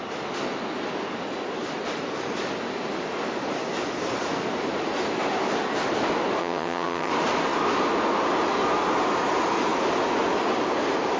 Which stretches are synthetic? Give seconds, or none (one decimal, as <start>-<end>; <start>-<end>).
6.4-7.1